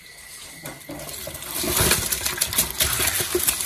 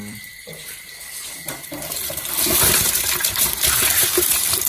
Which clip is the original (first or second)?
first